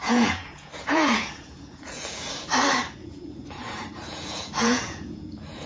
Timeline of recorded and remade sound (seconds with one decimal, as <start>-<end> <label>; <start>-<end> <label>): 0.0-2.5 remade; 2.5-3.0 recorded; 3.0-5.7 remade